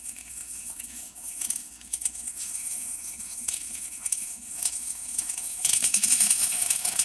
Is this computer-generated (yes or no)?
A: yes